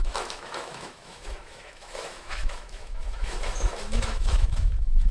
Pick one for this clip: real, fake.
fake